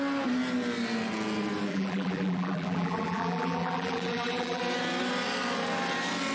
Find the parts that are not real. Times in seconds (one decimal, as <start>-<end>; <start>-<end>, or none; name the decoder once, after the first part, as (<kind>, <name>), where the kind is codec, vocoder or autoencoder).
1.7-4.6 (vocoder, BigVGAN v2)